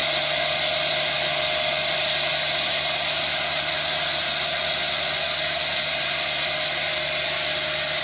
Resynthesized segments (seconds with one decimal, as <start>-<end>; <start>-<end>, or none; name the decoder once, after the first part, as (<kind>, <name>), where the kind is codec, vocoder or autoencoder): none